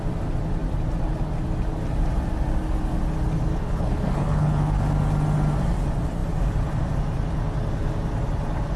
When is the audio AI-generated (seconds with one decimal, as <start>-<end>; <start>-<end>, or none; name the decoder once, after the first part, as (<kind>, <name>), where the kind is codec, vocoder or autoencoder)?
3.5-4.8 (codec, HILCodec)